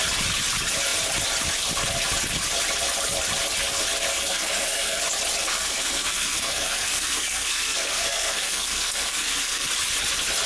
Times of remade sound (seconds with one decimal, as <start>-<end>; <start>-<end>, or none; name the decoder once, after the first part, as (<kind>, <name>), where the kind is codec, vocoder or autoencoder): 4.1-5.0 (codec, SNAC); 5.4-9.7

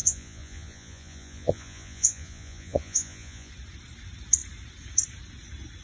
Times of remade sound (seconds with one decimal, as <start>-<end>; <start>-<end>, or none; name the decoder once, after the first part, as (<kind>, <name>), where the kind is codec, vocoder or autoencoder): 0.0-3.5 (vocoder, Vocos)